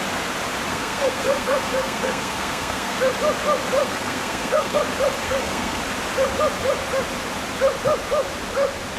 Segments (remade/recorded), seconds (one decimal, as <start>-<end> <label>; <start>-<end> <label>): 0.0-0.7 recorded; 0.7-3.0 remade; 3.0-3.8 recorded; 3.8-4.8 remade; 4.8-5.2 recorded; 5.2-5.8 remade; 5.8-9.0 recorded